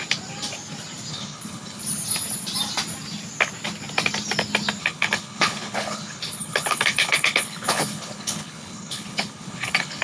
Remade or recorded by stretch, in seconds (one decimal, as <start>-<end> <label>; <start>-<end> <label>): 0.0-1.1 recorded; 1.1-1.8 remade; 1.8-4.8 recorded; 4.8-10.0 remade